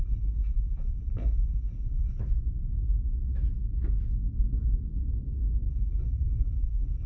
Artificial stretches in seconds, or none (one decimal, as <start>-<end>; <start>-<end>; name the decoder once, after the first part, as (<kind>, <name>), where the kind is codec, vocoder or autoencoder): 0.0-2.2 (codec, HILCodec); 5.7-7.1

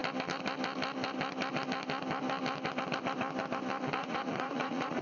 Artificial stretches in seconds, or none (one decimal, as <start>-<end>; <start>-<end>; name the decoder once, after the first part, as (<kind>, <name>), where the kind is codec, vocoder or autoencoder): 4.0-5.0 (vocoder, Vocos)

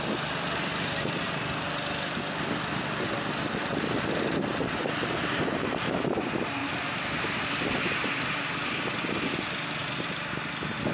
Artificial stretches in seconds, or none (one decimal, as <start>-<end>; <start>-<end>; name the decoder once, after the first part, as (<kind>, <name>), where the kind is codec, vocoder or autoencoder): 4.5-6.1 (vocoder, BigVGAN v2); 6.6-8.2; 9.8-10.5

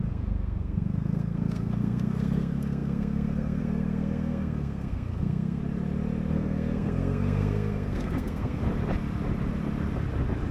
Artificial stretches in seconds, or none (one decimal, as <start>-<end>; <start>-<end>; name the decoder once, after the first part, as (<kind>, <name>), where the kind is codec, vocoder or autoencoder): 0.0-5.6 (codec, SNAC); 6.3-8.6